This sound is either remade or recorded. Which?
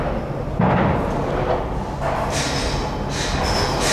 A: recorded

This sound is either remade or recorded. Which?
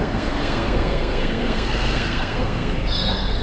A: remade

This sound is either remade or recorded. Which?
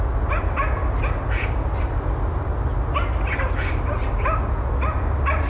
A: recorded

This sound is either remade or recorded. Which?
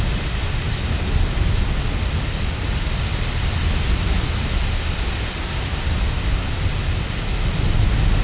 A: recorded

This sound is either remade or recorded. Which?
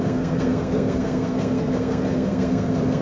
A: remade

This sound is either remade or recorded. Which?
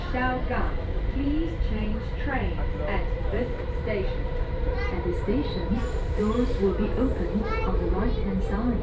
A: remade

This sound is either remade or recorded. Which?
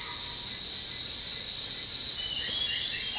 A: recorded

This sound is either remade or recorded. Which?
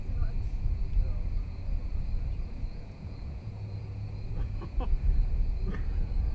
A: remade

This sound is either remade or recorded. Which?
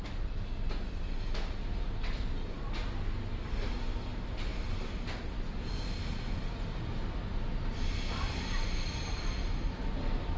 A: recorded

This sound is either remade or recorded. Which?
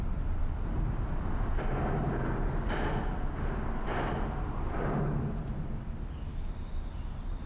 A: recorded